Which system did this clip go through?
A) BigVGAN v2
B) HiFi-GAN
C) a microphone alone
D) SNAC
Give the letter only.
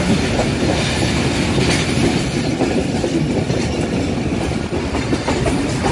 C